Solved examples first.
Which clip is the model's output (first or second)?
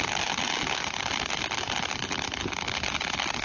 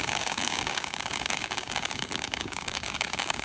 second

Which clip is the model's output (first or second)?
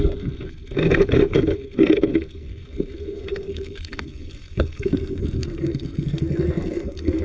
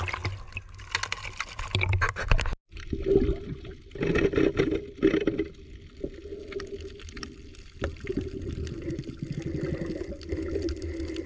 first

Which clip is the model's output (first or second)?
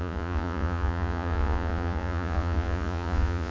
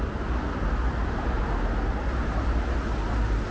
first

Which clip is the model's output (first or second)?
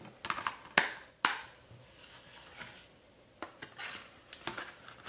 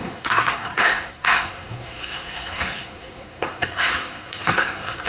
second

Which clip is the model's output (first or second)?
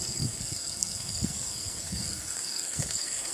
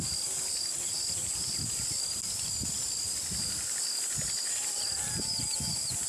first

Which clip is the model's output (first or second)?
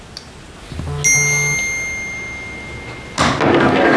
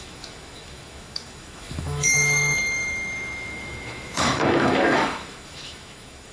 second